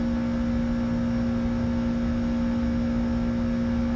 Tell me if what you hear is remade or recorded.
recorded